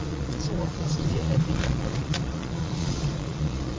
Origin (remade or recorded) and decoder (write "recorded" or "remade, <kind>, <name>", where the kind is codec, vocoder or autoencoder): remade, vocoder, Vocos